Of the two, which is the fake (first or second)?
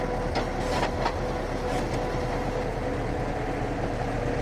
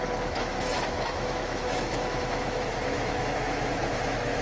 second